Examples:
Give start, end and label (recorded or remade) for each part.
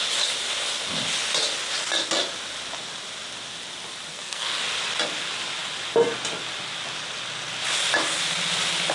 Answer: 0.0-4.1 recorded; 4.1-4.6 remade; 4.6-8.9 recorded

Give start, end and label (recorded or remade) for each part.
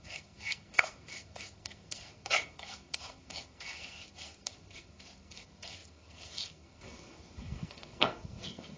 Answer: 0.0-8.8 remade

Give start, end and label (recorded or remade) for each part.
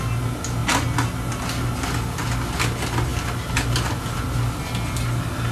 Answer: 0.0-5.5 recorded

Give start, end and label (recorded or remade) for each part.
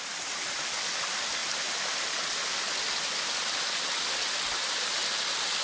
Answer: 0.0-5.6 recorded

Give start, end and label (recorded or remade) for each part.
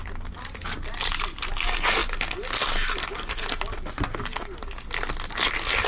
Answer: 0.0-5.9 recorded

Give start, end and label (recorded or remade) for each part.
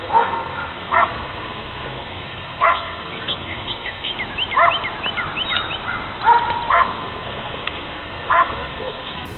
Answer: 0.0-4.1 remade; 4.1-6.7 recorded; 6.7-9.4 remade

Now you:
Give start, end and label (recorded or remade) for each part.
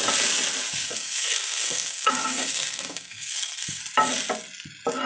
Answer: 0.0-0.7 recorded; 0.7-3.8 remade; 3.8-5.1 recorded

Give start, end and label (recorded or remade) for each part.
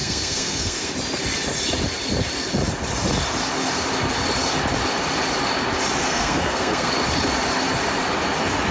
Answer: 0.0-0.9 remade; 0.9-6.0 recorded; 6.0-6.9 remade; 6.9-8.7 recorded